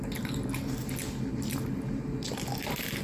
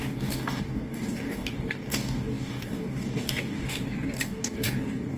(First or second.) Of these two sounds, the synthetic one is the second